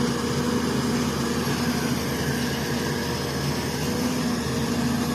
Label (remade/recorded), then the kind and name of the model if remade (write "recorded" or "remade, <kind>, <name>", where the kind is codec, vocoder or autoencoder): recorded